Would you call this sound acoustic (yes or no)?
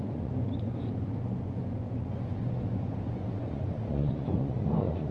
no